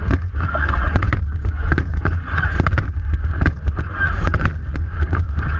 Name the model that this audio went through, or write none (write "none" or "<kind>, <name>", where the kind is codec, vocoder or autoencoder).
vocoder, Vocos